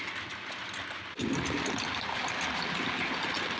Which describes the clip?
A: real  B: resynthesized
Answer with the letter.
A